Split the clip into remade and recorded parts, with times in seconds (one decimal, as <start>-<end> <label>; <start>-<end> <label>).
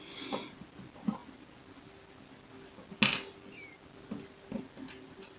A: 0.0-5.4 recorded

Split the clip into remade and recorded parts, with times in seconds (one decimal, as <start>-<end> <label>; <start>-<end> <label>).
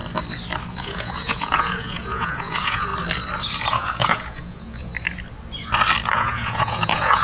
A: 0.0-0.7 recorded; 0.7-2.9 remade; 2.9-3.7 recorded; 3.7-4.9 remade; 4.9-6.1 recorded; 6.1-7.2 remade